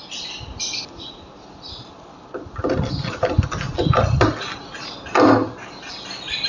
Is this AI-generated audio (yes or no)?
no